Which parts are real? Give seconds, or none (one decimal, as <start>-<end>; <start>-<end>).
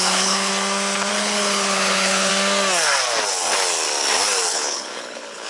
0.5-1.1; 2.3-4.5